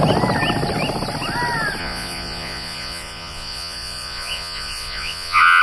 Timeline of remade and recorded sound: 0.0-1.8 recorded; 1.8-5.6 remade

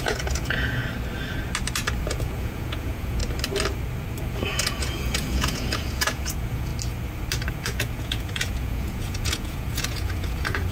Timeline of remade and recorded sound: 0.0-0.8 remade; 0.8-2.0 recorded; 2.0-3.2 remade; 3.2-4.2 recorded; 4.2-6.7 remade; 6.7-7.5 recorded; 7.5-10.7 remade

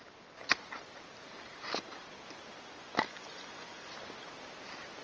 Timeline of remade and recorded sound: 0.0-3.1 recorded; 3.1-3.9 remade; 3.9-5.0 recorded